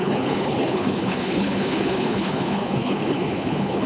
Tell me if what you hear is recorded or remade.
remade